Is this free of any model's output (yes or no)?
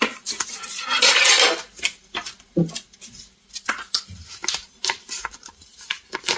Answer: yes